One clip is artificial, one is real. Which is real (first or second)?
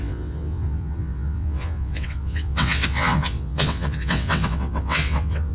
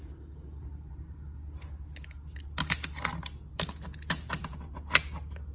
second